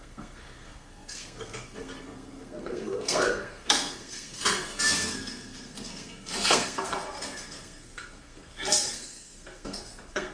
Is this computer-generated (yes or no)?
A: yes